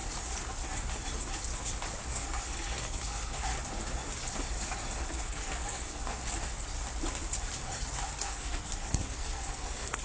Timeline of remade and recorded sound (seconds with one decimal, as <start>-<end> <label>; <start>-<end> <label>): 0.0-2.1 recorded; 2.1-3.5 remade; 3.5-5.0 recorded; 5.0-6.2 remade; 6.2-8.2 recorded; 8.2-10.0 remade